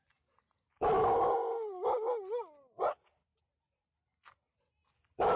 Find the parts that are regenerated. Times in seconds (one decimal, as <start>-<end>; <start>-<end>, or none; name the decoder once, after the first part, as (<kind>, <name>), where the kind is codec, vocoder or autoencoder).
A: none